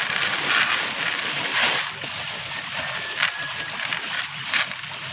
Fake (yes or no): no